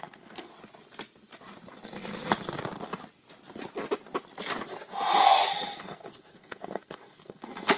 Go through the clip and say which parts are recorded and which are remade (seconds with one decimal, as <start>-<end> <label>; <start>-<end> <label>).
0.0-0.5 remade; 0.5-5.2 recorded; 5.2-7.8 remade